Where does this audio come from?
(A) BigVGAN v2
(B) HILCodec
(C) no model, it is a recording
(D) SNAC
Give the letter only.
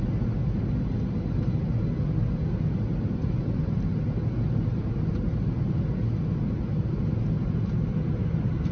C